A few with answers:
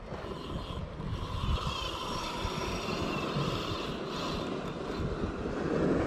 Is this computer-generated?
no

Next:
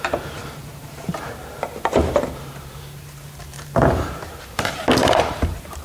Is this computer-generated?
yes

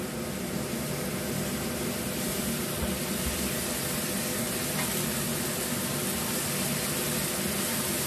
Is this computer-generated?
no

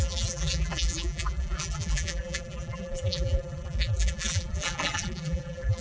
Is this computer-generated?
yes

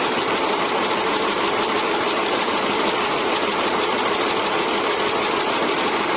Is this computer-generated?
no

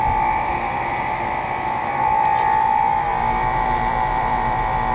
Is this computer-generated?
yes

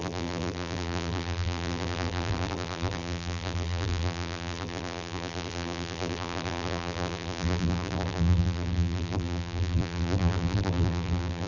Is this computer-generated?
yes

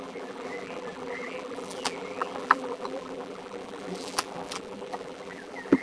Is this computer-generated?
yes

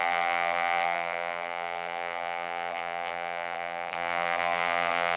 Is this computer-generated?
yes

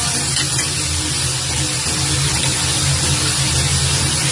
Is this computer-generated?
no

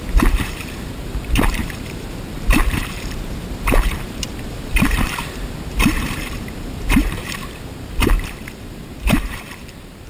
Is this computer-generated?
yes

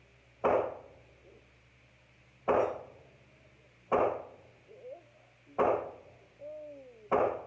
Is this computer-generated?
no